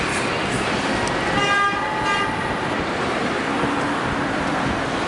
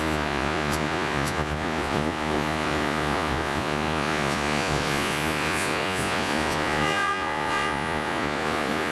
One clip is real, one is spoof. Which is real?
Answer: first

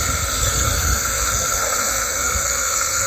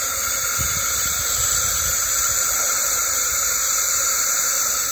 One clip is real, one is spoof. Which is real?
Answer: second